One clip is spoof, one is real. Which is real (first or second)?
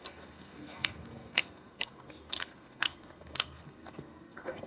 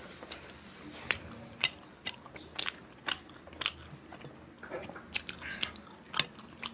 second